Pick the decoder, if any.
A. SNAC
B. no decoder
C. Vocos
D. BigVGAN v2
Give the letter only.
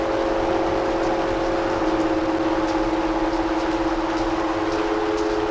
B